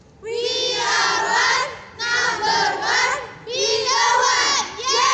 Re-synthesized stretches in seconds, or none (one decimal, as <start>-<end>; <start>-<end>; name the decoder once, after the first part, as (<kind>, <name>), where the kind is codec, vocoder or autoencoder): none